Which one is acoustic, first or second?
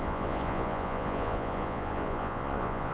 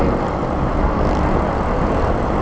second